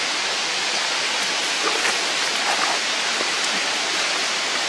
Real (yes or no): yes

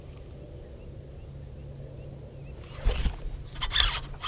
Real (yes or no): yes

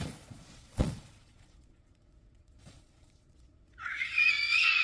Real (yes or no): no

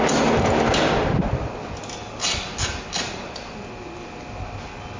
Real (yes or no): yes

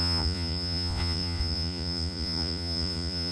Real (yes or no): no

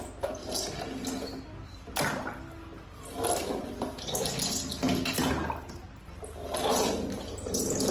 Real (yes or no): yes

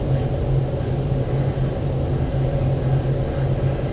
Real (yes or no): yes